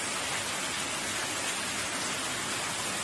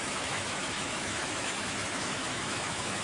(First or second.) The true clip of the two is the first